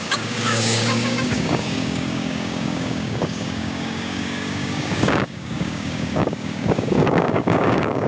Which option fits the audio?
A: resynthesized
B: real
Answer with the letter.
A